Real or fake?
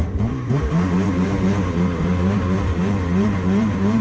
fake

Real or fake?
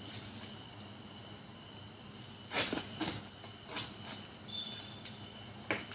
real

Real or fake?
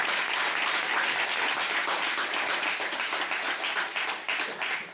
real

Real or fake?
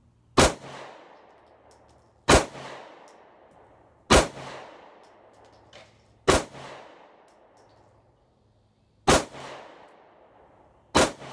real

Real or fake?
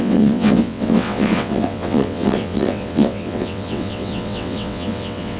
fake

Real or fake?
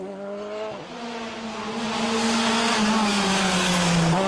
real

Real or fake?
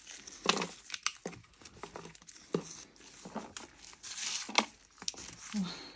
real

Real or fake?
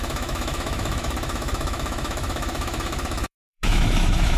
fake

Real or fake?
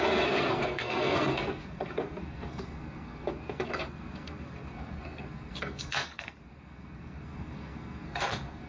fake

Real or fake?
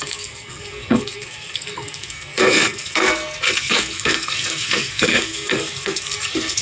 fake